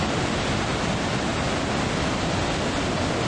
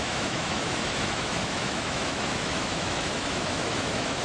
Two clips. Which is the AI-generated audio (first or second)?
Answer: second